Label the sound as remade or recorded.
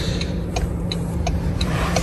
remade